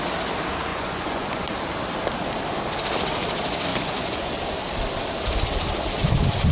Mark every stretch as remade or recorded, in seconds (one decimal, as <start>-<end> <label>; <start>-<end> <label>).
0.0-0.7 recorded; 0.7-1.5 remade; 1.5-3.7 recorded; 3.7-4.3 remade; 4.3-6.5 recorded